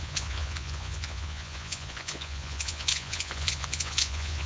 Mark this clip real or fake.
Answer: fake